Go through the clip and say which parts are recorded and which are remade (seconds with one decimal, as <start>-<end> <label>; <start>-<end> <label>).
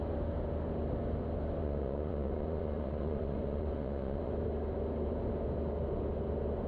0.0-1.6 recorded; 1.6-4.3 remade; 4.3-6.7 recorded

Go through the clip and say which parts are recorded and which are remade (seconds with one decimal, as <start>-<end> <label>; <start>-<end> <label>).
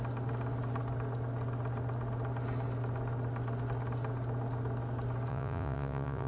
0.0-5.3 recorded; 5.3-6.3 remade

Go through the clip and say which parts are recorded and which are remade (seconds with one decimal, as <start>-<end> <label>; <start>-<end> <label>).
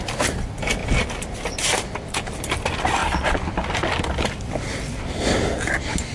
0.0-6.1 recorded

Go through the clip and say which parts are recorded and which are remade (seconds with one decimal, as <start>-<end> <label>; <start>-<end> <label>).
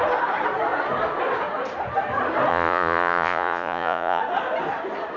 0.0-2.5 recorded; 2.5-4.2 remade; 4.2-5.2 recorded